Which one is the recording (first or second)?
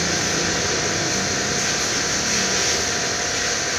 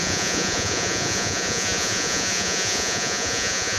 first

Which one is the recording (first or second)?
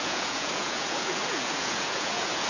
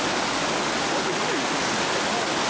second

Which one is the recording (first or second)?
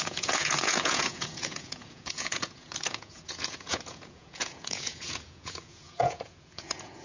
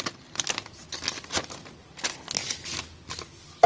second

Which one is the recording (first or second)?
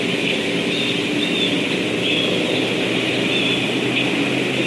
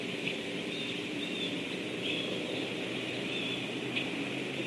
first